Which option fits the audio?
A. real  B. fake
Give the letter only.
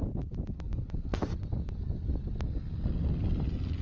A